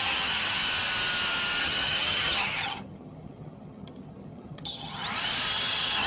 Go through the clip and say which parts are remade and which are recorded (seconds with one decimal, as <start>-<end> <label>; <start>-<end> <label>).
0.0-0.6 remade; 0.6-1.6 recorded; 1.6-5.0 remade; 5.0-5.5 recorded; 5.5-6.1 remade